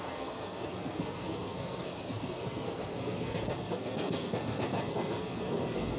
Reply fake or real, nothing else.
fake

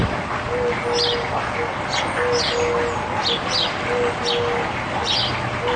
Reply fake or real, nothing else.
real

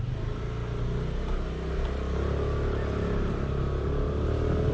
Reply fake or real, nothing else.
real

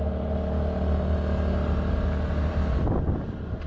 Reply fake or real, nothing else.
real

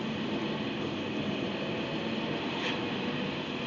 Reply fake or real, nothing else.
real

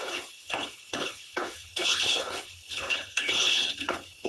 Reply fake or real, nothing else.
fake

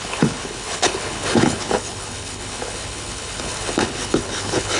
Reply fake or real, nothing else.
fake